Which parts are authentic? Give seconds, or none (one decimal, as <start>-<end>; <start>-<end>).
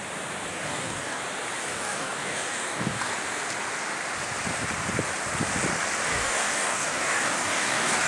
0.0-0.5; 1.2-1.6; 3.1-6.1